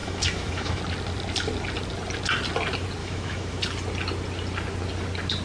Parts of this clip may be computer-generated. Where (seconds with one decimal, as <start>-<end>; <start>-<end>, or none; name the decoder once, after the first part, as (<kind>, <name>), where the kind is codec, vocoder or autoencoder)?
0.0-0.8 (autoencoder, DAC-VAE); 3.0-3.6